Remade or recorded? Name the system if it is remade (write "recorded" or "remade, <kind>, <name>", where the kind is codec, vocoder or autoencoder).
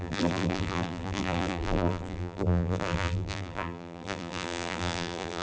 remade, vocoder, BigVGAN v2